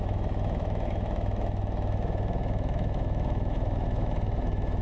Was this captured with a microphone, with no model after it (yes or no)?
no